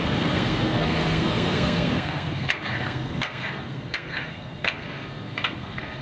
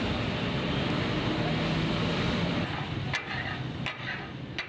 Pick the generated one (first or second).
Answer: first